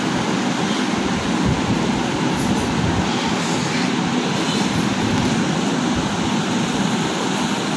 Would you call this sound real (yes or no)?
yes